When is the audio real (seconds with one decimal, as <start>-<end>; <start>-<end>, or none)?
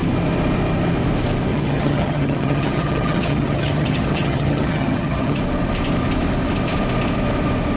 0.0-1.5; 5.4-7.8